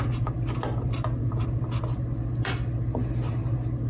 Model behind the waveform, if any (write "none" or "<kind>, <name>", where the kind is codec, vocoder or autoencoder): none